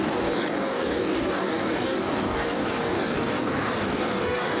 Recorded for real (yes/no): no